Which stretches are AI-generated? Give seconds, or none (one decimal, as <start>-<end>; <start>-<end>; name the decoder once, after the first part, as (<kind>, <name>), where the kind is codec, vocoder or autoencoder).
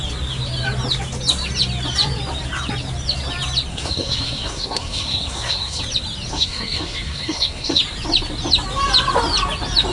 3.7-5.8 (codec, SNAC); 6.3-7.8